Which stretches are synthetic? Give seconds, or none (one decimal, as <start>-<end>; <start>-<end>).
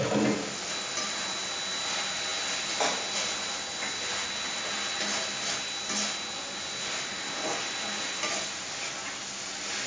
none